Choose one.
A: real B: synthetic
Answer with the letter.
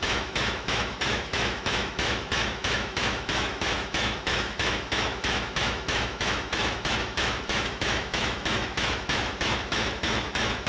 B